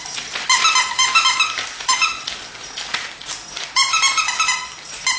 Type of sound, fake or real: real